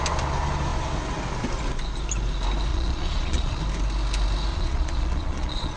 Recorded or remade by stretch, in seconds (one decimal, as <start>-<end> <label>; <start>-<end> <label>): 0.0-2.7 recorded; 2.7-3.6 remade; 3.6-4.5 recorded; 4.5-5.8 remade